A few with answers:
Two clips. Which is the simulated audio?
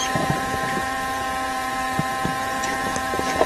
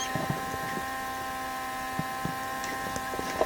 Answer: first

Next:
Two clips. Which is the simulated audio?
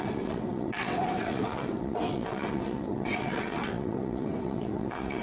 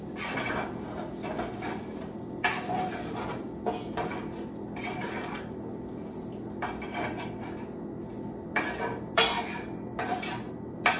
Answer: first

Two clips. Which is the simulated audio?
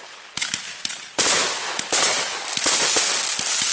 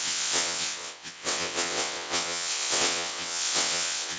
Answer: second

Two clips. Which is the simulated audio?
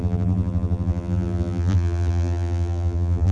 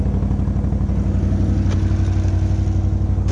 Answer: first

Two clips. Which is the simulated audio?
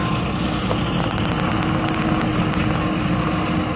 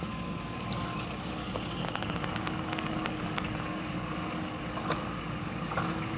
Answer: second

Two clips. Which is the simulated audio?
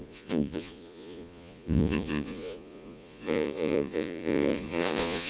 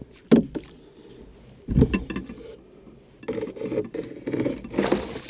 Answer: first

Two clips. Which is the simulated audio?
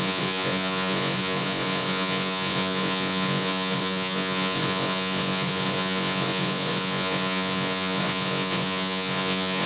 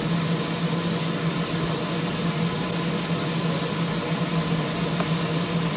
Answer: first